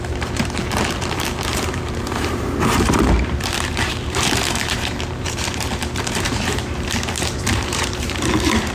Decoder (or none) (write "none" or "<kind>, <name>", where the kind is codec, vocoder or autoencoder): vocoder, BigVGAN v2